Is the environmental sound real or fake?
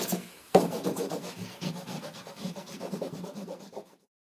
fake